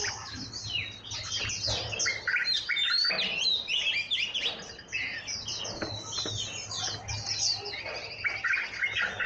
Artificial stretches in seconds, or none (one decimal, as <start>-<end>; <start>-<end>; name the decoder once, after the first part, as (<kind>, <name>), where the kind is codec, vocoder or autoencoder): 0.6-1.5 (vocoder, BigVGAN v2); 2.4-3.3; 5.5-6.8